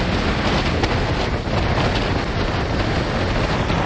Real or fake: real